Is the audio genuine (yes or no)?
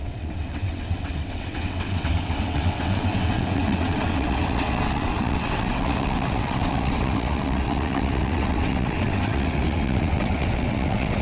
no